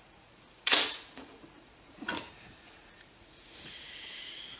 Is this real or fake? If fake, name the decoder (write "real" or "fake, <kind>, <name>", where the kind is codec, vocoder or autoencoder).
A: fake, vocoder, Vocos